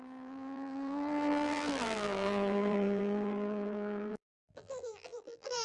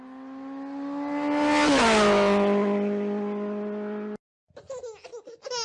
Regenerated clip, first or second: first